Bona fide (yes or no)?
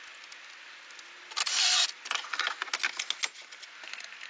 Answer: yes